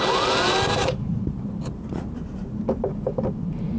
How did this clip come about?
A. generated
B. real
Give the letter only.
B